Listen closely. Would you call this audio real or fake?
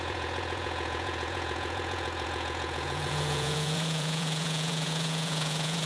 fake